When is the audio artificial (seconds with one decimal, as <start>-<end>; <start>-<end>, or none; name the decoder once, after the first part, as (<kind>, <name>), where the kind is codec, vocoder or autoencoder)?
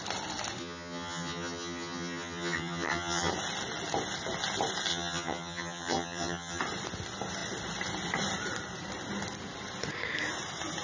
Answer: 0.6-3.3 (vocoder, HiFi-GAN); 4.9-6.6